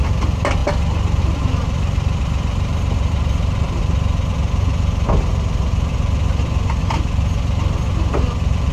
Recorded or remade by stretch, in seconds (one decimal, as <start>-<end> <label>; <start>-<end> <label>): 0.0-3.8 remade; 3.8-8.7 recorded